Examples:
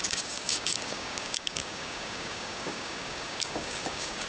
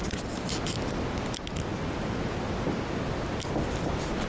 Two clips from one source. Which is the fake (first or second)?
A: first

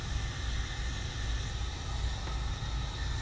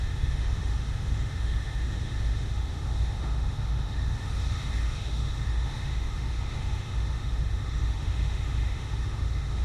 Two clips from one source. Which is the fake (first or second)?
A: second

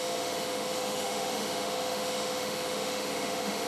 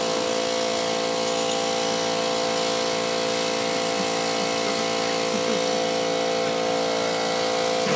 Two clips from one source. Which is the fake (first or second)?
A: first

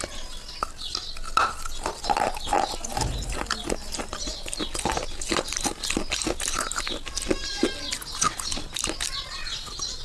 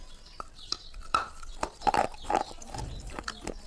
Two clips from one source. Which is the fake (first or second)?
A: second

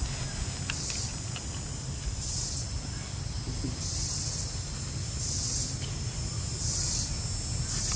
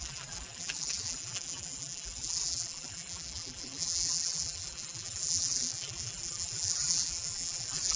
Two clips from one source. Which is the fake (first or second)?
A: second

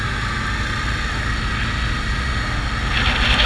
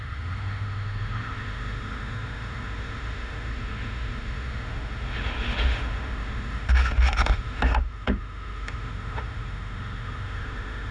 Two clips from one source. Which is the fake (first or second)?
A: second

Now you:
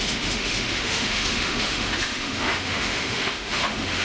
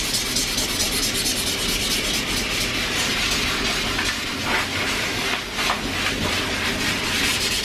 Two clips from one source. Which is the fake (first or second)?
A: first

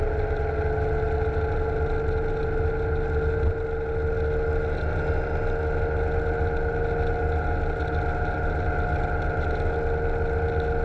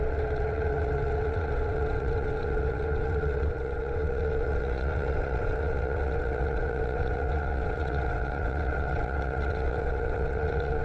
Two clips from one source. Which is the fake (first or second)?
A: second